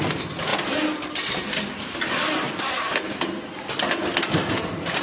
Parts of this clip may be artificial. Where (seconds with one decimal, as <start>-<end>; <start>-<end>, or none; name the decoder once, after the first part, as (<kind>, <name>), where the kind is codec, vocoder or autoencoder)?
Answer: none